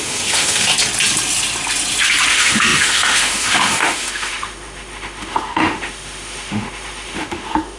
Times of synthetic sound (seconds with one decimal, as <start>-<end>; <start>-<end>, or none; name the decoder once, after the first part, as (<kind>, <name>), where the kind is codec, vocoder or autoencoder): 0.0-0.7 (autoencoder, DAC-VAE); 2.3-7.8